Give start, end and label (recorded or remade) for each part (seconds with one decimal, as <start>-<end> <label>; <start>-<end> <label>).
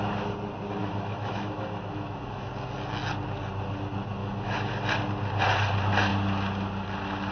0.0-0.8 recorded; 0.8-2.5 remade; 2.5-4.2 recorded; 4.2-4.7 remade; 4.7-7.3 recorded